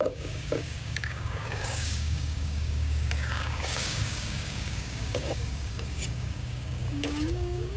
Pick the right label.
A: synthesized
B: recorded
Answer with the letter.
A